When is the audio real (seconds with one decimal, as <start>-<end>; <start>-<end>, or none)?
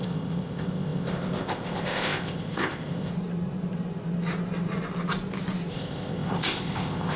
3.1-5.7